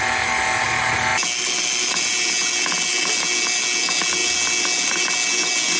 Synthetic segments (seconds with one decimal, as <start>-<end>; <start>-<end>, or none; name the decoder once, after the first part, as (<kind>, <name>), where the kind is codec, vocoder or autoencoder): none